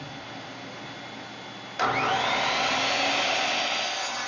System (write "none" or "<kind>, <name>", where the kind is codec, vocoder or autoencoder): none